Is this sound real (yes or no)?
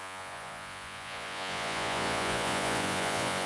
no